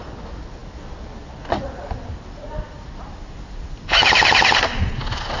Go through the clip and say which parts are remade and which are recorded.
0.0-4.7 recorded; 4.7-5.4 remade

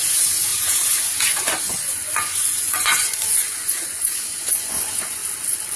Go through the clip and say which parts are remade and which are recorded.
0.0-5.2 remade; 5.2-5.8 recorded

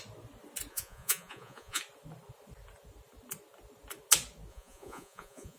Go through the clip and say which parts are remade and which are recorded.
0.0-0.7 recorded; 0.7-1.8 remade; 1.8-4.5 recorded; 4.5-5.6 remade

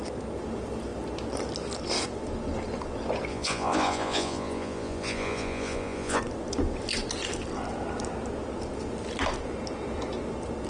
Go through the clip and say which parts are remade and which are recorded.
0.0-3.3 recorded; 3.3-6.2 remade; 6.2-10.7 recorded

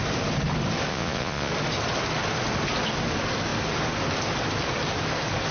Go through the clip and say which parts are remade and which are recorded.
0.0-0.9 recorded; 0.9-1.5 remade; 1.5-5.5 recorded

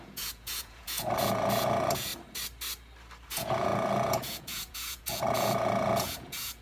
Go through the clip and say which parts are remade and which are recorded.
0.0-2.1 remade; 2.1-3.3 recorded; 3.3-6.6 remade

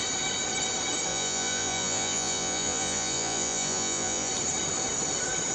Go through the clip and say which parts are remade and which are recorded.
0.0-1.1 recorded; 1.1-4.3 remade; 4.3-5.5 recorded

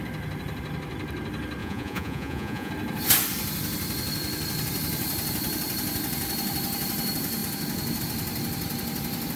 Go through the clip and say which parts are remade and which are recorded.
0.0-1.6 recorded; 1.6-2.7 remade; 2.7-9.4 recorded